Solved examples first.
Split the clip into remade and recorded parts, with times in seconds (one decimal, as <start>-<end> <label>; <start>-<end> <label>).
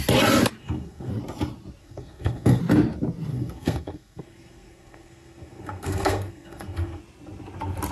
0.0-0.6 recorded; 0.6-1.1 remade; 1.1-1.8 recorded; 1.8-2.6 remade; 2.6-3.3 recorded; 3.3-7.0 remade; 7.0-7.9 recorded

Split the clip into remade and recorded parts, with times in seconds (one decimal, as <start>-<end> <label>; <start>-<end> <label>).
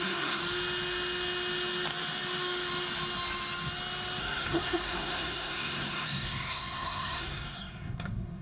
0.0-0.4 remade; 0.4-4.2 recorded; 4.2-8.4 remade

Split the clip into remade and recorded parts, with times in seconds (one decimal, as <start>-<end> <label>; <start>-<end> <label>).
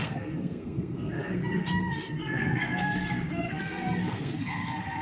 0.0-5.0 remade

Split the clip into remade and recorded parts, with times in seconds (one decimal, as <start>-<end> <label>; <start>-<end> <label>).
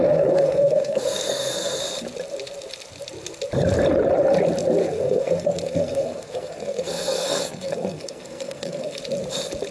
0.0-1.8 remade; 1.8-4.8 recorded; 4.8-9.0 remade; 9.0-9.7 recorded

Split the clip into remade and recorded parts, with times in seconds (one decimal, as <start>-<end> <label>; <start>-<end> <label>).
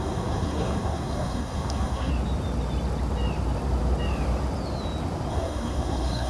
0.0-2.1 remade; 2.1-5.3 recorded; 5.3-6.3 remade